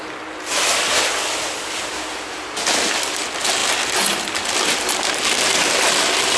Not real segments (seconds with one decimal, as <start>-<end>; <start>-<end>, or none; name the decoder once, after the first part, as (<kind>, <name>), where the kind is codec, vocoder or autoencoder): none